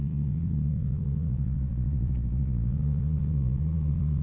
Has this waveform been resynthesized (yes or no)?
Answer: yes